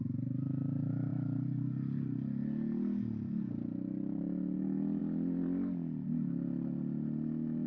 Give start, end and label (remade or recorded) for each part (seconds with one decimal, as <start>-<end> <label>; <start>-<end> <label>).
0.0-7.7 recorded